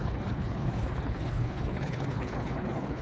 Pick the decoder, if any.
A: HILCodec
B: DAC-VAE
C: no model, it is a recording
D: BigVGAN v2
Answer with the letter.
A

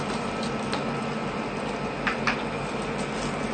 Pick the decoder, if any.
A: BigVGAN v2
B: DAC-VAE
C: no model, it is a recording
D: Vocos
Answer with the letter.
C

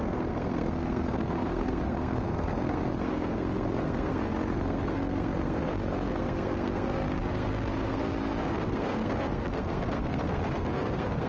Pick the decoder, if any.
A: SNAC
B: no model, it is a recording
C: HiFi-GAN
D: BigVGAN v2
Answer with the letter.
A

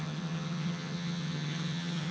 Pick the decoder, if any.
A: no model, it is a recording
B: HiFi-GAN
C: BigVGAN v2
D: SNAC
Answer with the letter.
B